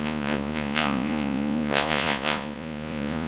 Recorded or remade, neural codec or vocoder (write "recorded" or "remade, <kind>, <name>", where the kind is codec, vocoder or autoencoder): remade, vocoder, Vocos